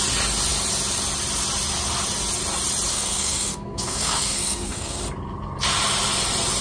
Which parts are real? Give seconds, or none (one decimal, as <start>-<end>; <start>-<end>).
0.0-2.9; 5.0-6.6